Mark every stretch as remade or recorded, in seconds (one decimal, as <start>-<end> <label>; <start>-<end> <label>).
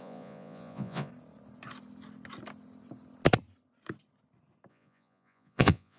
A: 0.0-1.1 remade; 1.1-4.7 recorded; 4.7-6.0 remade